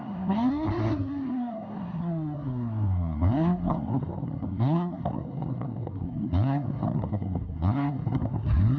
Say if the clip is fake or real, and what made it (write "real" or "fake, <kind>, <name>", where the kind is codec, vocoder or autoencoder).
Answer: fake, codec, SNAC